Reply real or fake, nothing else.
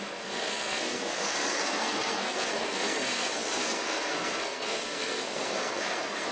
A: fake